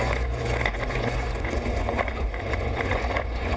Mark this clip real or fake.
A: fake